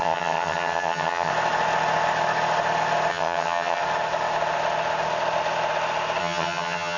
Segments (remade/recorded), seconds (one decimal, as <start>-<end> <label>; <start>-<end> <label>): 0.0-1.3 remade; 1.3-3.1 recorded; 3.1-3.8 remade; 3.8-6.2 recorded; 6.2-7.0 remade